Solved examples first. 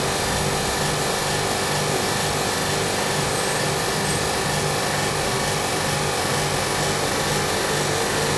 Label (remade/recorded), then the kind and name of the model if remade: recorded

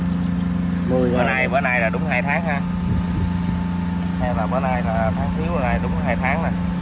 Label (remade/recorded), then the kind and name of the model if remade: recorded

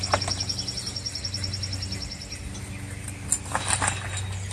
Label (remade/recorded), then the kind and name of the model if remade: recorded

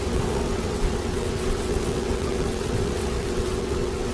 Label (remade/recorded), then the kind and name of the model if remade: remade, vocoder, WaveNeXt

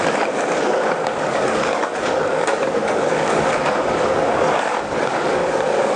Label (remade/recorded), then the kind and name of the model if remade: remade, codec, DAC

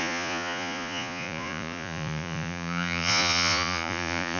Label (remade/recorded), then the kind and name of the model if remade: remade, vocoder, Vocos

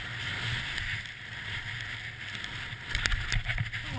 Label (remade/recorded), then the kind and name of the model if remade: recorded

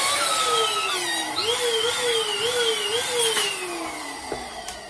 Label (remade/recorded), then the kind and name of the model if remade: recorded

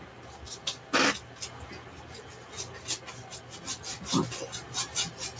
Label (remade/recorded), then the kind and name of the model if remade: recorded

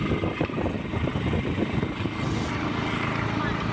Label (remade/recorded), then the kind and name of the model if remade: recorded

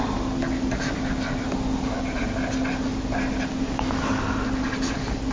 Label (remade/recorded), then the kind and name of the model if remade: recorded